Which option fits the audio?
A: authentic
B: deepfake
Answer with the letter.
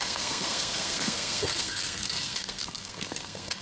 B